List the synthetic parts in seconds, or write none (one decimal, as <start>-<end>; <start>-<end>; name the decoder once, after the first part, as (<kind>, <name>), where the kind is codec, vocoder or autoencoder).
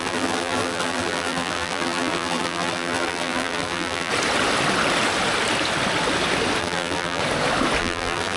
0.0-4.1 (vocoder, BigVGAN v2); 6.6-7.2; 7.8-8.4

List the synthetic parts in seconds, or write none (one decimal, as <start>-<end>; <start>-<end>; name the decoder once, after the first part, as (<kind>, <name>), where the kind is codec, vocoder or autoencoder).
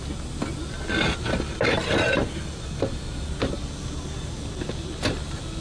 none